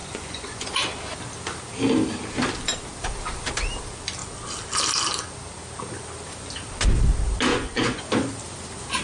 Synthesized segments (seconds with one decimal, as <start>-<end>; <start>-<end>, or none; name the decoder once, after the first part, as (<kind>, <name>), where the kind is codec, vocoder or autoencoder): 0.0-0.8 (vocoder, Vocos); 7.5-8.0